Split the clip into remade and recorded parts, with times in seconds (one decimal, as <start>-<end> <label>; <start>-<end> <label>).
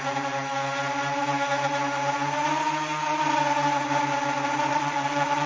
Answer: 0.0-4.7 recorded; 4.7-5.5 remade